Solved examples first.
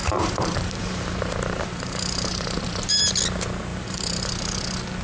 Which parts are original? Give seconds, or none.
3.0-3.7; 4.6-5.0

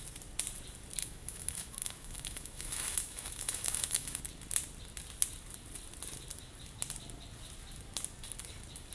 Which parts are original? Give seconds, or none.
0.0-1.0; 4.2-8.9